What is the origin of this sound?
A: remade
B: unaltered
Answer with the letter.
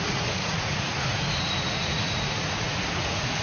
A